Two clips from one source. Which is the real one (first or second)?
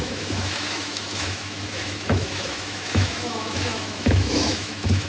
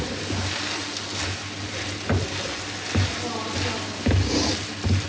second